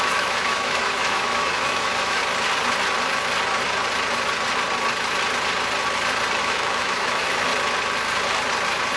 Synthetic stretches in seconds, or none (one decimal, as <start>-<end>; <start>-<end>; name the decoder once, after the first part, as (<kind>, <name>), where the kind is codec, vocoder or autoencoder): 0.0-2.2 (autoencoder, DAC-VAE); 6.4-7.5